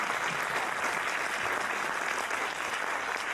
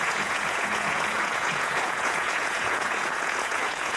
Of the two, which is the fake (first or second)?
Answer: second